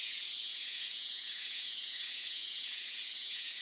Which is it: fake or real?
fake